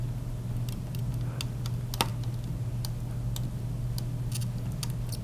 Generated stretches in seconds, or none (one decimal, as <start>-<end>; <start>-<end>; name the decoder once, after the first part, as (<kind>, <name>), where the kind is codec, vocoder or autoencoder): none